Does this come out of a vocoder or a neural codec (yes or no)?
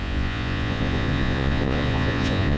yes